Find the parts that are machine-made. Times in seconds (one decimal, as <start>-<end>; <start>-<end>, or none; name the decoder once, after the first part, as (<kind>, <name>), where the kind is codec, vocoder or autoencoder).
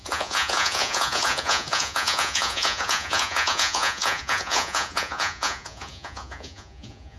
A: 0.0-7.2 (vocoder, Vocos)